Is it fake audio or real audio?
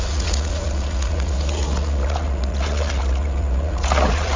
fake